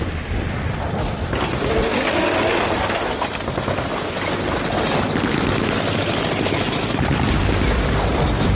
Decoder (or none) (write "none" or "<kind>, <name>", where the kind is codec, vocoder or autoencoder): none